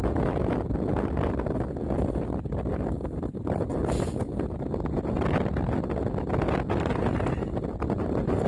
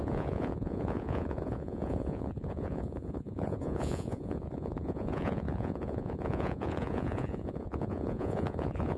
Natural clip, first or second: first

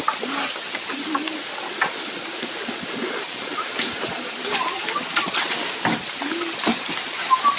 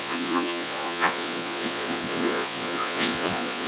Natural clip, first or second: first